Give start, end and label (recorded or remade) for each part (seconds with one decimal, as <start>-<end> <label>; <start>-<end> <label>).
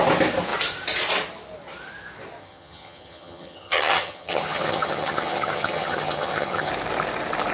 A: 0.0-2.4 recorded; 2.4-6.7 remade; 6.7-7.5 recorded